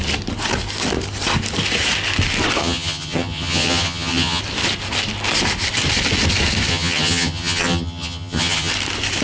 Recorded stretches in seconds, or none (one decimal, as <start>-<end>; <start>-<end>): 0.0-2.6; 4.4-6.7; 8.7-9.2